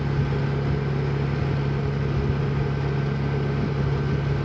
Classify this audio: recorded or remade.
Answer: recorded